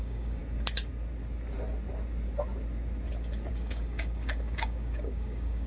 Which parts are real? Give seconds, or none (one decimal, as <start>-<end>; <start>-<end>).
0.4-3.5